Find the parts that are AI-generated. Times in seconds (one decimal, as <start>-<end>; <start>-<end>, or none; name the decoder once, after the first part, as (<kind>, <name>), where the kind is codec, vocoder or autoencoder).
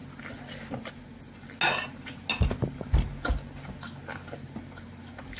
none